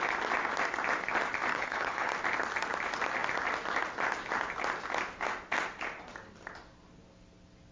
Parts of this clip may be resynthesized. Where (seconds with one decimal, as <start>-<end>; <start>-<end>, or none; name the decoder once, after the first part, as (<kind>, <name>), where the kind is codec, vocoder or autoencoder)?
1.5-2.1 (codec, HILCodec)